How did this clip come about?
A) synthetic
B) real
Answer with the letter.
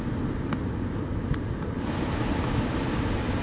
B